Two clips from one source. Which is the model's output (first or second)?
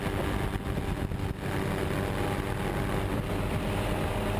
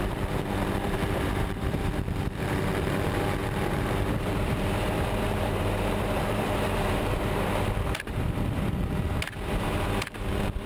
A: second